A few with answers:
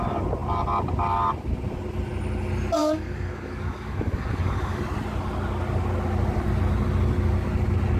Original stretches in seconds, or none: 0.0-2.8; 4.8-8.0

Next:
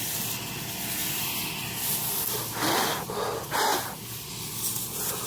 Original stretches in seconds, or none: 0.0-1.0; 2.5-3.7; 4.3-5.3

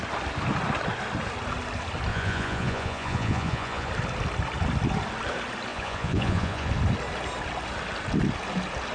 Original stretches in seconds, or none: 0.0-2.1; 3.9-5.7; 6.7-8.9

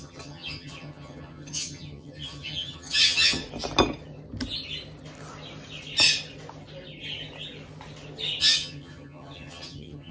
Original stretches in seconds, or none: 3.4-8.4

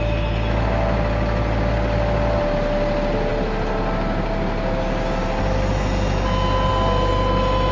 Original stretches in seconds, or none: 0.0-7.7

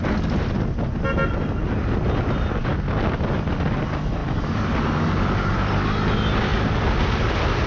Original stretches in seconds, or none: 0.0-6.5

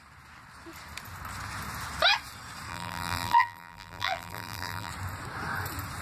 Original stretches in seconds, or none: 0.0-2.7; 4.9-6.0

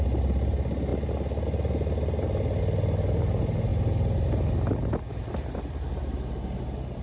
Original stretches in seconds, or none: 0.0-7.0